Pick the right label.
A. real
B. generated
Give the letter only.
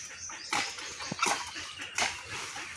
A